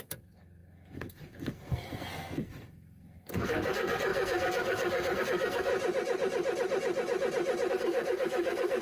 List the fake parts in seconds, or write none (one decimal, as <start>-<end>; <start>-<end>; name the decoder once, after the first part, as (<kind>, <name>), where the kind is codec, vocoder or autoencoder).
0.0-5.7 (codec, SNAC); 7.7-8.8